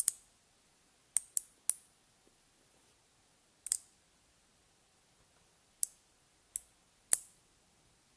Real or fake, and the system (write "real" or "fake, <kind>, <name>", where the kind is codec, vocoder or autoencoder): real